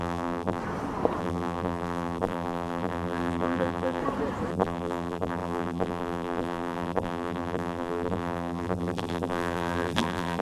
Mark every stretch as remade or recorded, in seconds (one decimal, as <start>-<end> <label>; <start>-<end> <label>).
0.0-0.6 remade; 0.6-1.2 recorded; 1.2-4.0 remade; 4.0-4.5 recorded; 4.5-10.4 remade